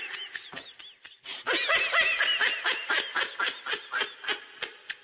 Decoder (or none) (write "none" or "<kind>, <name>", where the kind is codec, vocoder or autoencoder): none